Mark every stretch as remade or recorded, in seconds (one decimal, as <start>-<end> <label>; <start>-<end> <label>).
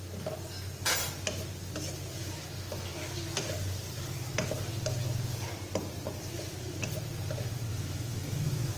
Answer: 0.0-7.7 recorded; 7.7-8.8 remade